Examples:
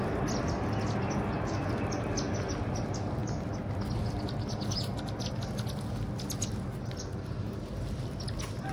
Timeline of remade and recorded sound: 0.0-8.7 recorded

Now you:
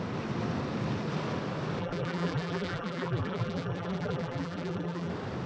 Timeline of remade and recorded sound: 0.0-1.8 recorded; 1.8-5.1 remade; 5.1-5.5 recorded

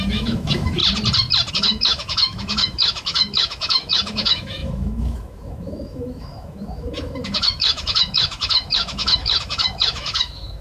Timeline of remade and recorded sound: 0.0-0.8 remade; 0.8-1.5 recorded; 1.5-10.6 remade

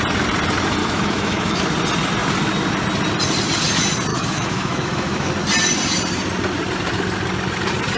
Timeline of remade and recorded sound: 0.0-0.8 recorded; 0.8-1.6 remade; 1.6-4.1 recorded; 4.1-5.3 remade; 5.3-8.0 recorded

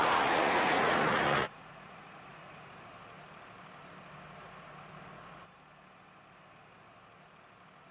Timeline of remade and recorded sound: 0.0-2.7 remade; 2.7-7.9 recorded